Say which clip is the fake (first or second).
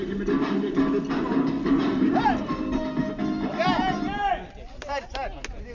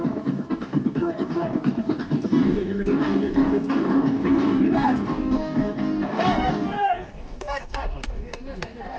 second